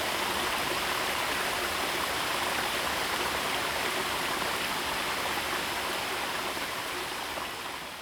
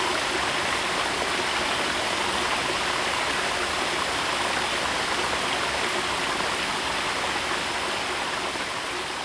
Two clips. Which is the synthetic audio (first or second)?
first